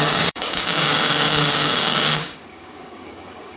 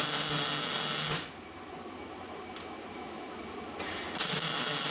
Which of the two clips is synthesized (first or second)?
first